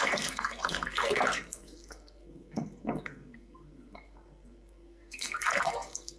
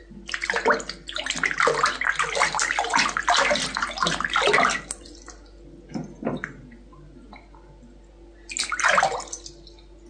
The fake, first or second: first